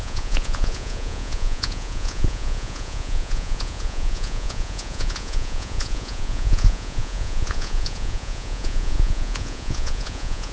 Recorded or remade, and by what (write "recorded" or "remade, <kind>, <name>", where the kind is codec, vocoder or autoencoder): remade, vocoder, Vocos